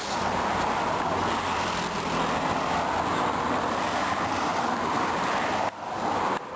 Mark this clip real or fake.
real